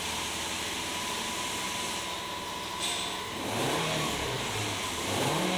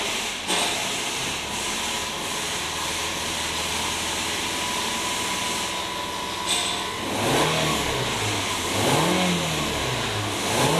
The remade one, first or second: first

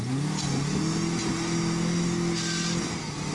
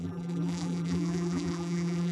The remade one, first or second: second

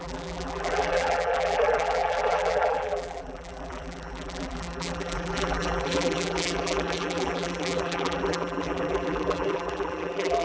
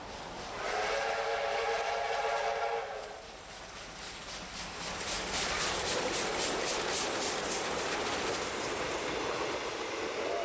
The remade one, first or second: first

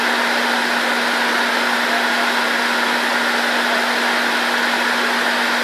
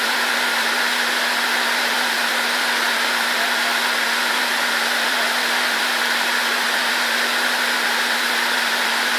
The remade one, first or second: second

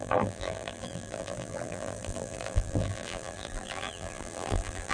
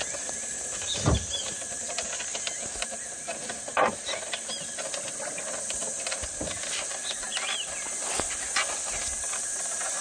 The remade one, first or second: first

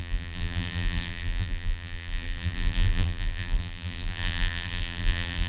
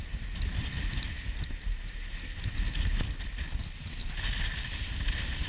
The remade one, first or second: first